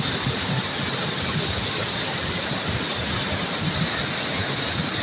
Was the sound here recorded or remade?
recorded